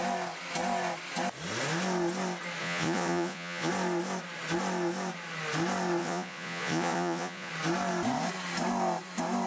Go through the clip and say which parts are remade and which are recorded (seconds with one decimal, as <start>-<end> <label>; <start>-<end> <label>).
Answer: 0.0-2.6 recorded; 2.6-3.7 remade; 3.7-6.0 recorded; 6.0-7.5 remade; 7.5-9.5 recorded